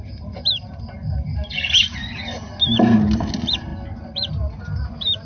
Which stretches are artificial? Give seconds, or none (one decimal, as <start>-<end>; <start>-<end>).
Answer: none